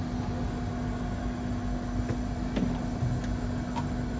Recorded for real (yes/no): yes